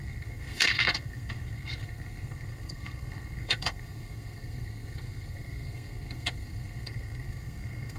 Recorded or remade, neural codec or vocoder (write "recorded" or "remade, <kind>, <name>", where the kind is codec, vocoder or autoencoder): remade, codec, SNAC